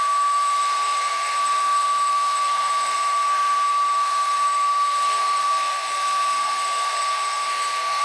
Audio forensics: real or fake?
fake